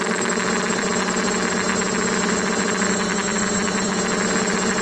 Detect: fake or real fake